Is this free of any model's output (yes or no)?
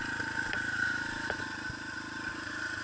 no